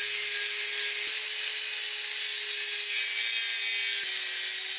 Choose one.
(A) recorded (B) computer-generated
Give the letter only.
A